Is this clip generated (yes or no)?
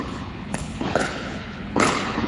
yes